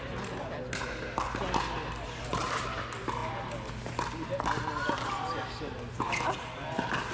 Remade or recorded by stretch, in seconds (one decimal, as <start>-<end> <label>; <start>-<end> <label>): 0.0-7.1 recorded